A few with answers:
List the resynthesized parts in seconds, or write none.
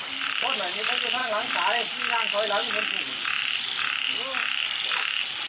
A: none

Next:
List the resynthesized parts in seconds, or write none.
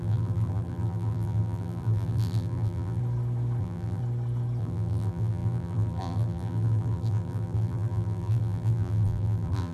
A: 0.0-3.0 (vocoder, BigVGAN v2); 3.6-4.0; 4.6-9.7